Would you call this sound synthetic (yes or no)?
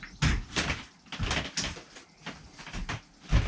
no